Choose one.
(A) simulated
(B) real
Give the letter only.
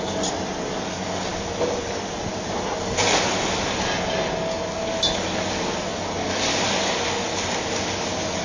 B